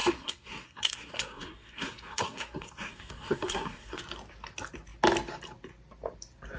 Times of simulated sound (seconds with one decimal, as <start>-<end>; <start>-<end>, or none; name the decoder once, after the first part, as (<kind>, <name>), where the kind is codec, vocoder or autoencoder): 0.0-4.0 (codec, SNAC)